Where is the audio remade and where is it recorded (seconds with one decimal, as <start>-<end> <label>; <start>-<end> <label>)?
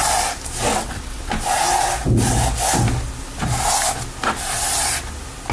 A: 0.0-0.7 recorded; 0.7-1.2 remade; 1.2-5.5 recorded